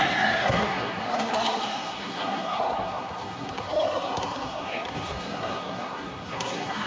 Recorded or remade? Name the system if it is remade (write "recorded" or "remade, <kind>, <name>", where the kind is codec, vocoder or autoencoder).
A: remade, codec, SNAC